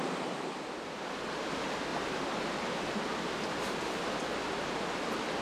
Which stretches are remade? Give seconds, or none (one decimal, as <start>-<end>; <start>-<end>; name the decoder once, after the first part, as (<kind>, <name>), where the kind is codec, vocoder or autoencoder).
none